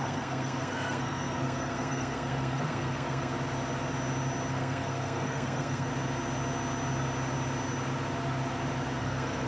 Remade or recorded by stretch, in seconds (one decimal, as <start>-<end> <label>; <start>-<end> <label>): 0.0-3.3 remade; 3.3-4.5 recorded; 4.5-5.9 remade; 5.9-9.0 recorded; 9.0-9.5 remade